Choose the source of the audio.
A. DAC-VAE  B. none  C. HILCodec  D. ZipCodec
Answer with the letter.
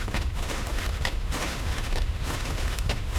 A